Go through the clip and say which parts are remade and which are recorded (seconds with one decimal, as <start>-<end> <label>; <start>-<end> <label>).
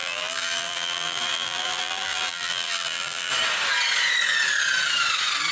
0.0-3.3 remade; 3.3-5.5 recorded